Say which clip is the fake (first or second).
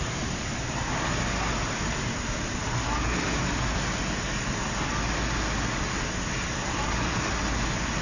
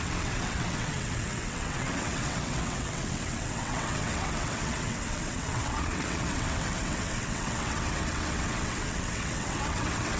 second